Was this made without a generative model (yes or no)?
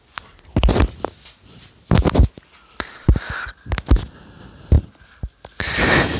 yes